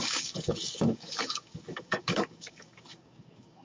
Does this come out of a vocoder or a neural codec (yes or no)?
yes